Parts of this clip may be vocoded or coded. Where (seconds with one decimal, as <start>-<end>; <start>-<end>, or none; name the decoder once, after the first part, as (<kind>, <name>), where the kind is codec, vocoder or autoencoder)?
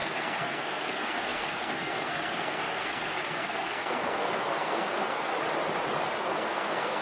0.0-5.3 (codec, SNAC); 6.2-7.0